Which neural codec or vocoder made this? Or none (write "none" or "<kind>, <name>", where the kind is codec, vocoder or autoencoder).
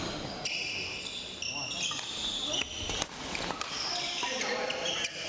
none